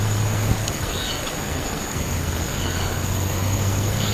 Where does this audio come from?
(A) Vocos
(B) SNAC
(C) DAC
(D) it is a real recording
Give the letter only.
B